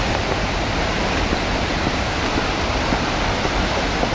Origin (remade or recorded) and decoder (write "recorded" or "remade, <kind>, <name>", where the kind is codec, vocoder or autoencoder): recorded